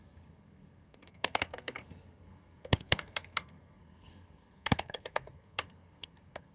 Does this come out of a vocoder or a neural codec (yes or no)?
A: yes